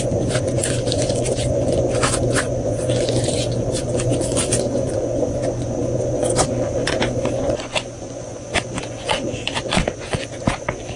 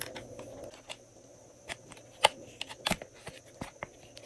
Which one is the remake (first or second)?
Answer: first